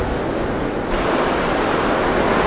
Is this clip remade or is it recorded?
recorded